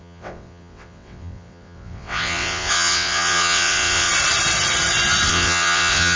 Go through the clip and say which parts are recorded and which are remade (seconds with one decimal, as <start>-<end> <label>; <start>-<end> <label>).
0.0-4.1 remade; 4.1-5.3 recorded; 5.3-6.2 remade